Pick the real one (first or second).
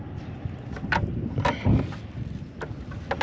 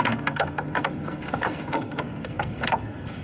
first